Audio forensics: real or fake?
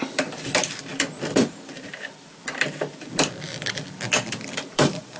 fake